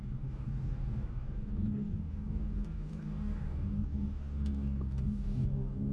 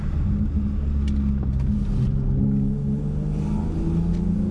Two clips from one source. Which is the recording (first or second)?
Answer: second